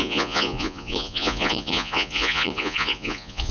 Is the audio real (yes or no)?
no